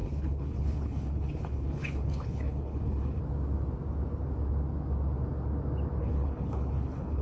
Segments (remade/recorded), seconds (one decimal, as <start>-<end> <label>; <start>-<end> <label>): 0.0-3.2 remade; 3.2-6.0 recorded; 6.0-7.2 remade